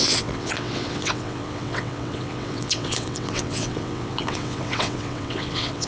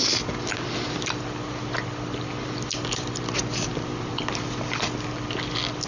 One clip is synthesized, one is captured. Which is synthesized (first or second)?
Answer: first